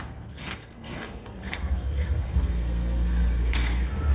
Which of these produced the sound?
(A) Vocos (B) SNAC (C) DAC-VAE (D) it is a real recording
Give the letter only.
B